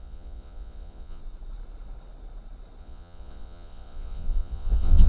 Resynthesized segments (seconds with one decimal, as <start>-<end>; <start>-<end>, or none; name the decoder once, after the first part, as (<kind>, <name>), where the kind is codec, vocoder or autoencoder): 0.0-1.2 (vocoder, Vocos); 2.8-5.1